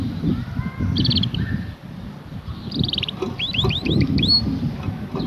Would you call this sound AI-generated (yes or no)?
no